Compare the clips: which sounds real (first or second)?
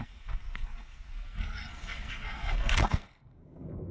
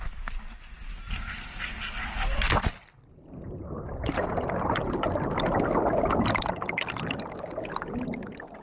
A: second